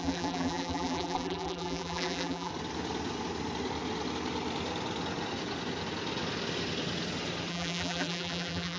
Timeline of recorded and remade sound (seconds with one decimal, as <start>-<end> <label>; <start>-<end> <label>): 0.0-2.5 remade; 2.5-7.5 recorded; 7.5-8.8 remade